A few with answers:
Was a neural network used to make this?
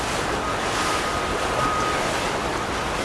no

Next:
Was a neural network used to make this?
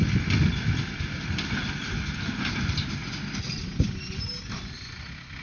no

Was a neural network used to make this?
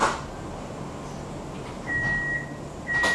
no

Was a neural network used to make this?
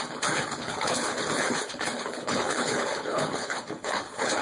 yes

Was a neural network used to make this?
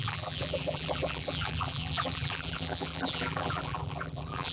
yes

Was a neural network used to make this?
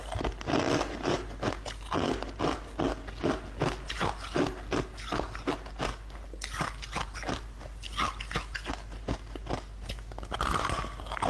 no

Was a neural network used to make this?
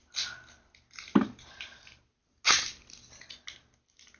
no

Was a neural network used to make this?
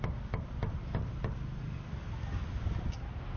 no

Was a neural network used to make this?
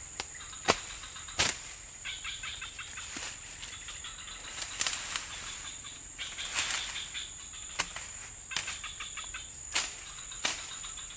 no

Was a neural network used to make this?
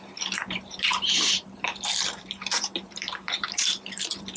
yes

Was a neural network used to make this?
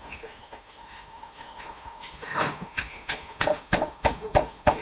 yes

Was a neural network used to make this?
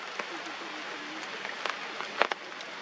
no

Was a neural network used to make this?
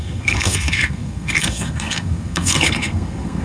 yes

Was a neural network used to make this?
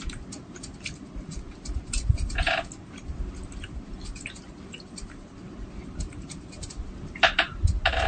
no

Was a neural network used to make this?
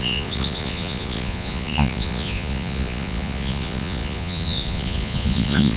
yes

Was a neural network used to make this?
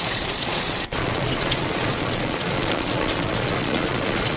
yes